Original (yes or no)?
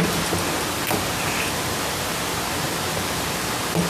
yes